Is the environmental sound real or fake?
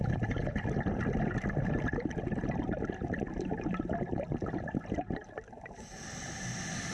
real